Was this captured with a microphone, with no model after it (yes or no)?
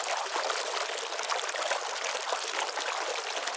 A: yes